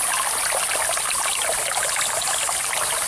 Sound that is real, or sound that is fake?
real